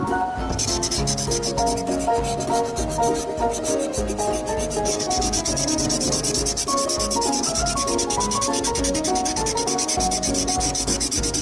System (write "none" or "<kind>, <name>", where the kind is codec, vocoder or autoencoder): none